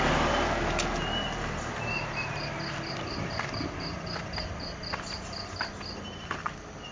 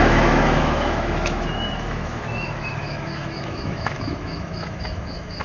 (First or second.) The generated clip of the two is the second